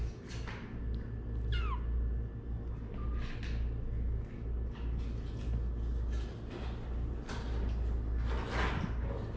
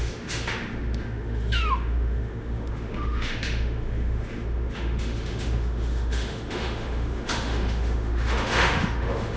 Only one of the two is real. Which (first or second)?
first